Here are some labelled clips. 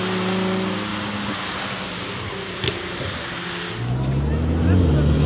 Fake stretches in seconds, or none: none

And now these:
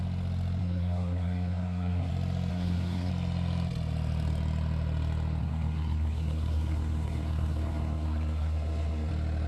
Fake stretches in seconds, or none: 0.6-2.1 (codec, SNAC); 2.5-3.1; 5.4-9.1

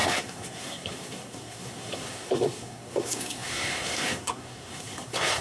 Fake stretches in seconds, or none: 0.0-5.4 (codec, SNAC)

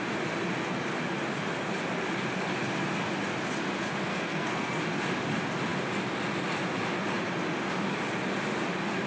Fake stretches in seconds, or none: 4.1-4.8 (codec, SNAC)